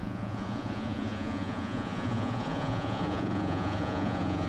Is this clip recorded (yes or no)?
no